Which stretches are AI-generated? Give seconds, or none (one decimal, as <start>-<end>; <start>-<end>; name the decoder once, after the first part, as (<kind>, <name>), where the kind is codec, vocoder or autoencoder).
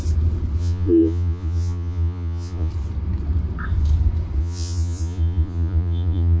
0.6-2.7 (vocoder, Vocos); 4.4-6.4